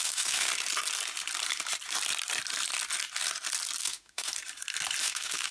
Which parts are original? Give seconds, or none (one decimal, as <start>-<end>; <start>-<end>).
0.5-3.8; 4.3-5.0